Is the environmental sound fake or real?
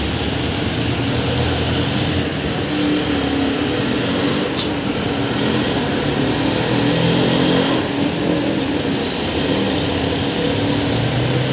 real